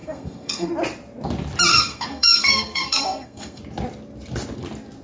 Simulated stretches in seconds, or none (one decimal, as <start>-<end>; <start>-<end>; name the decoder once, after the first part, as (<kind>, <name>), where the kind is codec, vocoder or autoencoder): 0.0-0.7 (codec, SNAC); 1.7-3.6